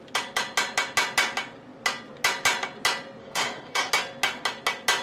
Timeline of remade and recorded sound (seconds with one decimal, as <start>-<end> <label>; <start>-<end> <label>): 0.0-3.2 recorded; 3.2-3.9 remade; 3.9-5.0 recorded